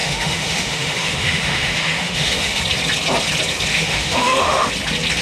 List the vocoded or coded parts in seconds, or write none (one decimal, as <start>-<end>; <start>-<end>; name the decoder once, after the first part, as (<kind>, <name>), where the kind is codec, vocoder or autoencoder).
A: 0.0-2.6 (autoencoder, DAC-VAE); 3.7-4.7